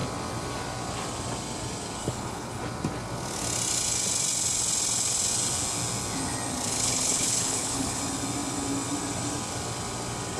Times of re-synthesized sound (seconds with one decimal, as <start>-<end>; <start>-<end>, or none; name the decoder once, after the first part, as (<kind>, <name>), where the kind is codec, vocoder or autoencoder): 2.0-2.6 (codec, HILCodec); 6.7-8.0